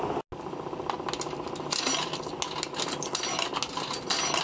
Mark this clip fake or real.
real